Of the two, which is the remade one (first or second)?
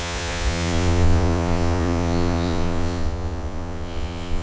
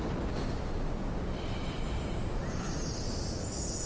first